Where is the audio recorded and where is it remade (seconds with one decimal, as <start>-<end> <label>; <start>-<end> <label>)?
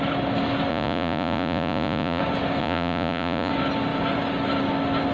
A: 0.0-0.7 recorded; 0.7-2.2 remade; 2.2-2.6 recorded; 2.6-3.5 remade; 3.5-5.1 recorded